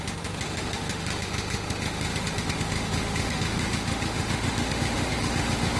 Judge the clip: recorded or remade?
remade